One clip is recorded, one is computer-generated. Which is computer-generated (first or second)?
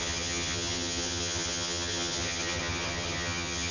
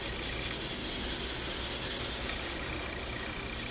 first